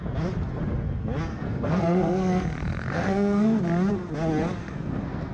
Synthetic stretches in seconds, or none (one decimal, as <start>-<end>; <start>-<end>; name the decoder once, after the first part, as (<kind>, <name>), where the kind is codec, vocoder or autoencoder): 1.3-3.6 (codec, SNAC); 4.6-5.3